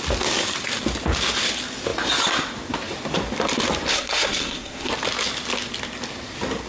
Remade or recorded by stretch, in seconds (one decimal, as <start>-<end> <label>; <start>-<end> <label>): 0.0-3.9 recorded; 3.9-4.9 remade; 4.9-6.7 recorded